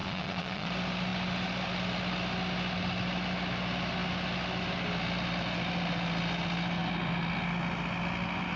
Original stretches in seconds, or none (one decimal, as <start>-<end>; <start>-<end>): 0.7-8.6